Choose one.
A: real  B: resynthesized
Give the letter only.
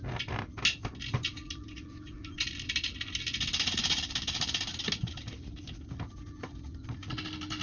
A